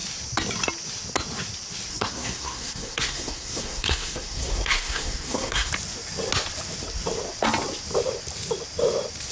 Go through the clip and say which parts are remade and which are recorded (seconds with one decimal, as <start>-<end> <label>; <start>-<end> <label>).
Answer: 0.0-1.9 recorded; 1.9-5.7 remade; 5.7-9.3 recorded